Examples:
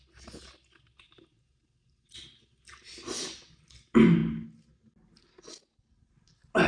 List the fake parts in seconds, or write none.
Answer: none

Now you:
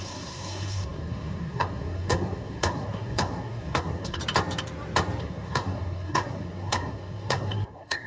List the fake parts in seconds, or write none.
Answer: 0.0-4.2 (codec, SNAC); 5.2-8.1

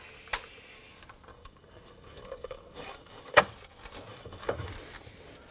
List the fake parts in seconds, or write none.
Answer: 1.3-3.4 (codec, DAC); 4.1-4.7

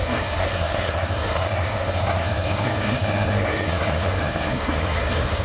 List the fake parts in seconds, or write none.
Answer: 0.0-5.4 (codec, SNAC)

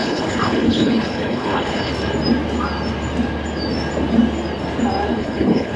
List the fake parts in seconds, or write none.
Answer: 0.0-1.9 (codec, HILCodec); 5.1-5.8